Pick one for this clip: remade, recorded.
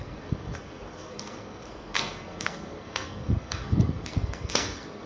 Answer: remade